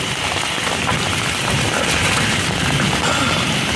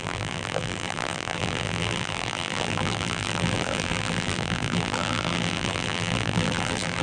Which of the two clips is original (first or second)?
first